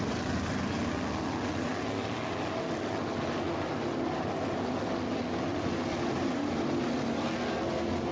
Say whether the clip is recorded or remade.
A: recorded